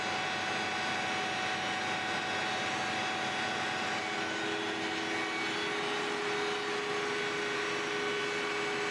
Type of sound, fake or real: real